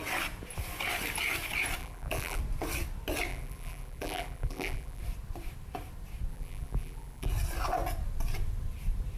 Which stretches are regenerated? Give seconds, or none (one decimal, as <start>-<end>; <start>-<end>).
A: 1.8-2.4; 3.3-5.0; 6.3-7.3